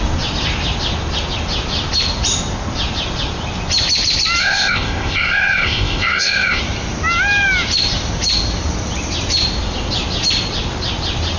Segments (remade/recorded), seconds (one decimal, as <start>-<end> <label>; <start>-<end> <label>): 0.0-4.4 recorded; 4.4-6.6 remade; 6.6-11.4 recorded